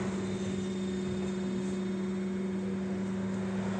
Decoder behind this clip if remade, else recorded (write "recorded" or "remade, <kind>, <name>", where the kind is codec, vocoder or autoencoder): recorded